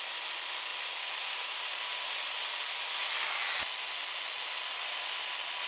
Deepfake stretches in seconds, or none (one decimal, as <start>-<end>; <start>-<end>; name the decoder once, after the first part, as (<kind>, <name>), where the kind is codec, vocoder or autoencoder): none